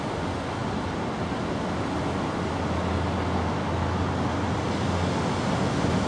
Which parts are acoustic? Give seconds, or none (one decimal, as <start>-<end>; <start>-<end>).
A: 0.0-6.1